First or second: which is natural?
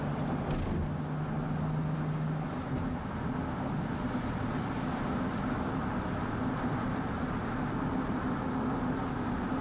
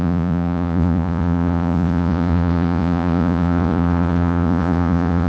first